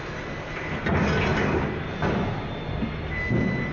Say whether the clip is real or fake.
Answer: real